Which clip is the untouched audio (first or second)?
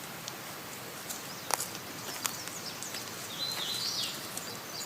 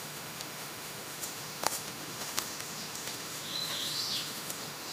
first